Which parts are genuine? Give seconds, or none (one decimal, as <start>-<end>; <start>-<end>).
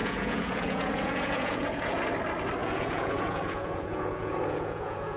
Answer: 2.0-2.6